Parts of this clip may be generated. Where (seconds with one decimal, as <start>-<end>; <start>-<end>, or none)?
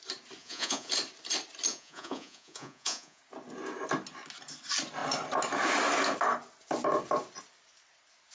0.4-0.9; 1.7-3.2